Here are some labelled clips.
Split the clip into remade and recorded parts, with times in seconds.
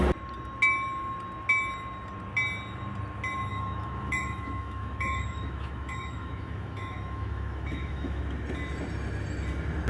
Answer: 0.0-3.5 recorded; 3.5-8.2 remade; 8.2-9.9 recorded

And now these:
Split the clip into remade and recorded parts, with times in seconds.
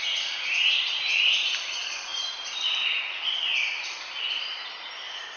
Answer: 0.0-5.4 recorded